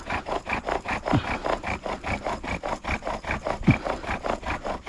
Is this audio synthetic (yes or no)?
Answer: no